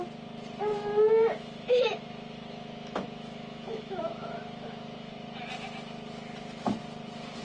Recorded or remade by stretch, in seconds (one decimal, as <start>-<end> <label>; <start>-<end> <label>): 0.0-0.7 recorded; 0.7-5.1 remade; 5.1-7.4 recorded